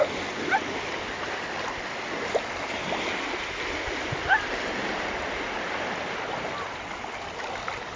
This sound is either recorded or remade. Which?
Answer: recorded